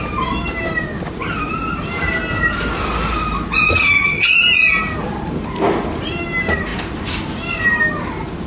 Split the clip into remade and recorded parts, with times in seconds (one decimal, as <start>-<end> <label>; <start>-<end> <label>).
0.0-3.8 recorded; 3.8-4.3 remade; 4.3-8.5 recorded